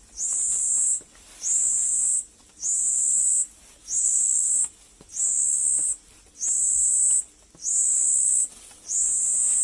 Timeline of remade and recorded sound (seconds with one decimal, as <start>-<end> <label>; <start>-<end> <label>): 0.0-4.0 recorded; 4.0-4.5 remade; 4.5-9.6 recorded